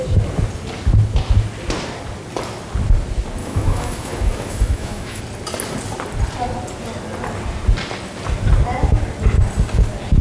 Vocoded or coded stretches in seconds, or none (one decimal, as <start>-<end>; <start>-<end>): 3.4-5.2